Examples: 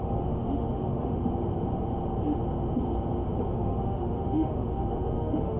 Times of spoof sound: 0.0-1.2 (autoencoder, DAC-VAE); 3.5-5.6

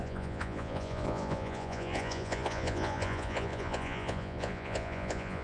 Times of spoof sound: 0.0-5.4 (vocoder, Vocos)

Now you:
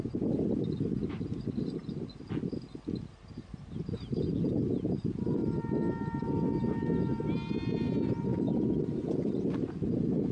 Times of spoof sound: none

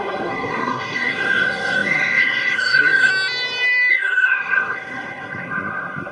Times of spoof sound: 0.0-3.1 (codec, SNAC); 3.9-6.1